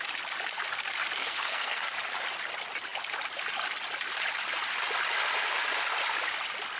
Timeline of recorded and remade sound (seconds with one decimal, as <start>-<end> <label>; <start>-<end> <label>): 0.0-1.2 recorded; 1.2-1.9 remade; 1.9-6.8 recorded